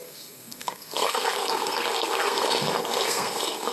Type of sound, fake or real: fake